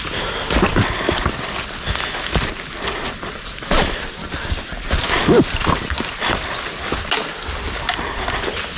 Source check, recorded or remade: recorded